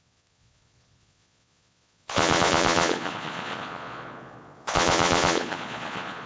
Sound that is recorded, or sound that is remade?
remade